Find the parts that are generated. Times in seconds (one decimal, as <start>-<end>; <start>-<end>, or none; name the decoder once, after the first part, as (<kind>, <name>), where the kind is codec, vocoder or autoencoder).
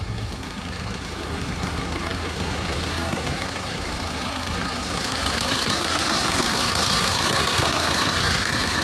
0.0-8.8 (codec, SNAC)